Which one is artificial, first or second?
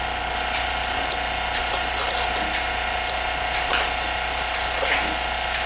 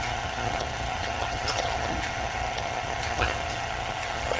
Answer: second